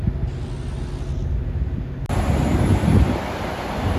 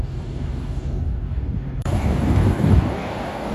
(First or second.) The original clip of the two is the first